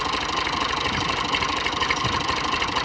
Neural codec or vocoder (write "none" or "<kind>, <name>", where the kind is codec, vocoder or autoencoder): none